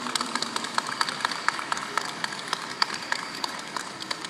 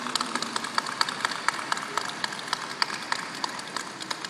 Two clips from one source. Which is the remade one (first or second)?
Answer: first